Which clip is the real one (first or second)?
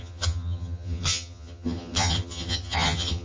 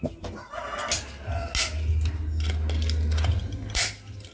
second